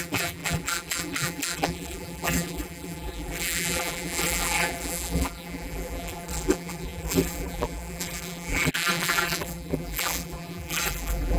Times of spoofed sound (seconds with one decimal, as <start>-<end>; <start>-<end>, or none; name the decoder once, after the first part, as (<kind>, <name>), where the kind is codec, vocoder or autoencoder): 0.0-11.4 (vocoder, BigVGAN v2)